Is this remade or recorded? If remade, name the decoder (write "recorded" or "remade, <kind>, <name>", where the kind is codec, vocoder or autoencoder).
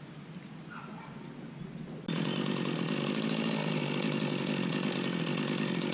recorded